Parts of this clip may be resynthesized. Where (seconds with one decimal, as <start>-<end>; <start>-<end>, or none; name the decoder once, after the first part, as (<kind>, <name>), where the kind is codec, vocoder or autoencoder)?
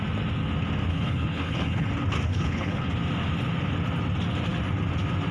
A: 0.9-1.9 (codec, HILCodec); 2.3-2.9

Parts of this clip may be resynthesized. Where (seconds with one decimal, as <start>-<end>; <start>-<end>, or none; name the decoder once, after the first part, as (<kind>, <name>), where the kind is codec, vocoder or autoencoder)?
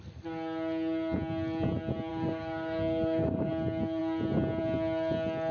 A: 2.1-3.5 (codec, DAC)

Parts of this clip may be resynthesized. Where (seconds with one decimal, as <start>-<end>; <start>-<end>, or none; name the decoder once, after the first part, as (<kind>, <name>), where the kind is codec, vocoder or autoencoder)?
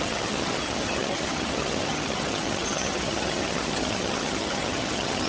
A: 0.0-5.3 (vocoder, HiFi-GAN)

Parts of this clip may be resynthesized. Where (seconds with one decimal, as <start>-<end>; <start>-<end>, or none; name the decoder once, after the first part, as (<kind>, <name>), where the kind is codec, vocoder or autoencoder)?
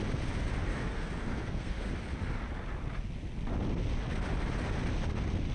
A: 0.7-1.9 (codec, SNAC)